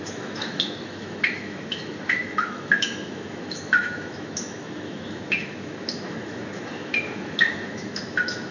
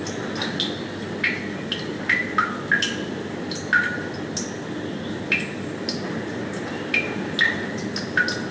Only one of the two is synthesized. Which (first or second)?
first